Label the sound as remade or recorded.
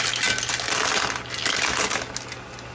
recorded